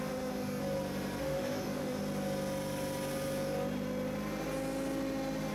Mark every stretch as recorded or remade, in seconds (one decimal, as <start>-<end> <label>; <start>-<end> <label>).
0.0-0.6 remade; 0.6-1.2 recorded; 1.2-2.0 remade; 2.0-5.5 recorded